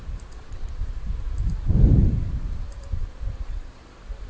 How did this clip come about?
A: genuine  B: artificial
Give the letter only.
B